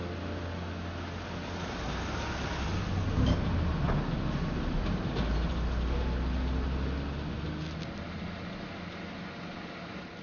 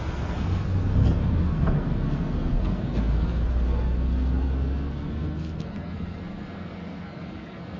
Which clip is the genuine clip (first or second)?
first